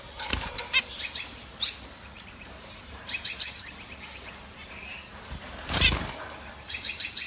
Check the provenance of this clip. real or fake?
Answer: fake